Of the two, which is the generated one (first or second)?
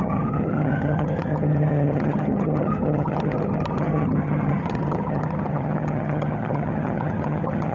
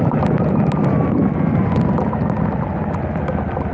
first